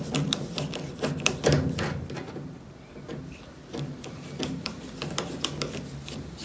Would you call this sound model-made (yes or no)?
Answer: no